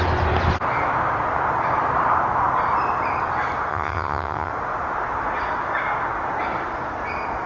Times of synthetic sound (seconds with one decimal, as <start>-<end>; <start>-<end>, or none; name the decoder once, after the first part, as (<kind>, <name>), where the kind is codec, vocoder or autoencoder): 3.7-4.5 (vocoder, HiFi-GAN)